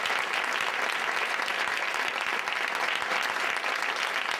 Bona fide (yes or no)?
yes